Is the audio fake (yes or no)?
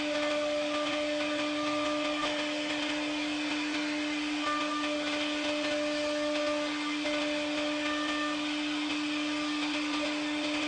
no